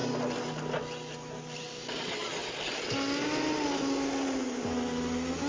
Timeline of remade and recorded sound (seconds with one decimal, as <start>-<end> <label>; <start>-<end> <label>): 0.0-5.5 recorded